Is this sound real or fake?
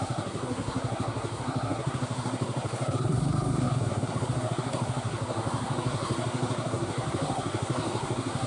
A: fake